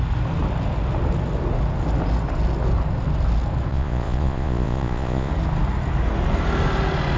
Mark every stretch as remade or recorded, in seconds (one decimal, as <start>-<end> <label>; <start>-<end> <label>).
0.0-3.7 recorded; 3.7-5.3 remade; 5.3-7.2 recorded